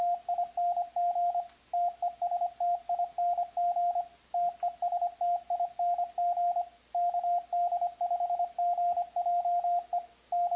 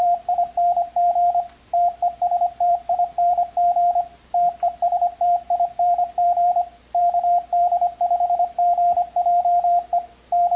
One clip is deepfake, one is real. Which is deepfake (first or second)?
second